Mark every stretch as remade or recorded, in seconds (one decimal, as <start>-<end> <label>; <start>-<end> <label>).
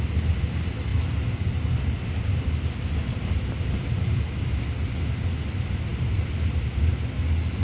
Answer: 0.0-7.6 recorded